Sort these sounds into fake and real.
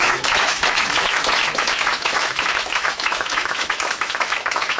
fake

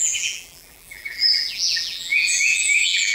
fake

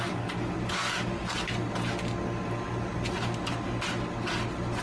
real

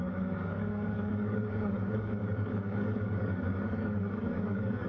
fake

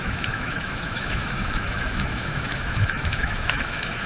fake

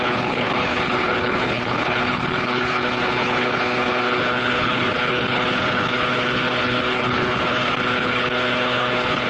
fake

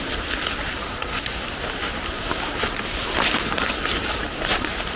real